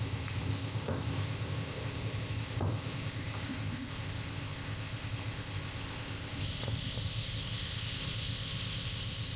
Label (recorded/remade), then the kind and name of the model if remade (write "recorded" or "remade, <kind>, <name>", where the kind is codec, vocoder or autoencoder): remade, codec, ZipCodec